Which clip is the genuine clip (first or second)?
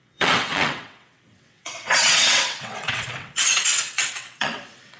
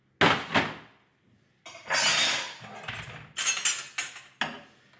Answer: second